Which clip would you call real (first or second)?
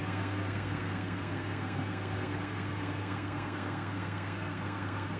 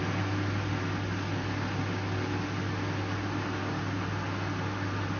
second